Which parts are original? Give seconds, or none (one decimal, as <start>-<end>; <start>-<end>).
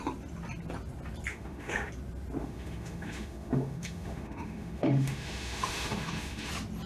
0.0-1.3; 1.9-2.4; 6.5-6.9